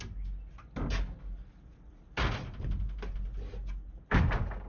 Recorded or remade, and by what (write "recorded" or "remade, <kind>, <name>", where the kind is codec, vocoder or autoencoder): recorded